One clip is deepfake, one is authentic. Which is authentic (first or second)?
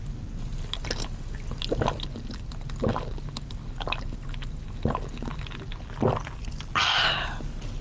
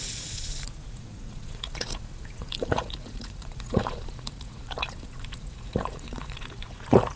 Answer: first